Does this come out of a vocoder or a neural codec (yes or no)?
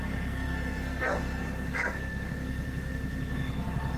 yes